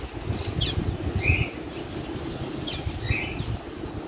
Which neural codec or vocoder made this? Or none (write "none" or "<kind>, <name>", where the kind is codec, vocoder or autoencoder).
none